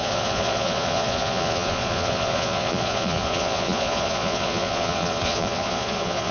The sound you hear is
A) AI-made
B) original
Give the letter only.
A